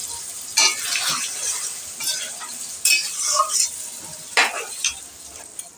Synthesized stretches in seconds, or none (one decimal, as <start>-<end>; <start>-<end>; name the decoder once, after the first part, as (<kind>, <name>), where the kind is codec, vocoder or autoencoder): none